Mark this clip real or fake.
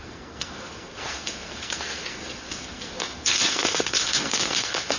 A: fake